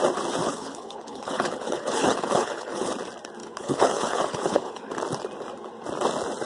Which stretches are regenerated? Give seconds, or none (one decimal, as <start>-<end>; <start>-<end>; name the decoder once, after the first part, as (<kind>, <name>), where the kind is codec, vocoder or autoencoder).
0.4-2.9 (codec, HILCodec); 3.4-4.9